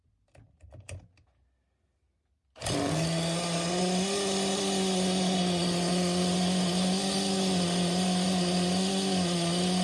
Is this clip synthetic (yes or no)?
no